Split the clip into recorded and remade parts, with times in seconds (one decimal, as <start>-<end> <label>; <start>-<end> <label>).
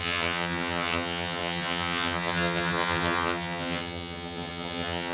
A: 0.0-5.1 remade